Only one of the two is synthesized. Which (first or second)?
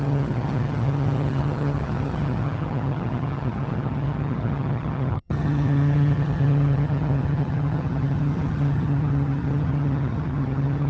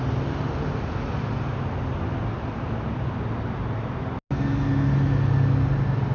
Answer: first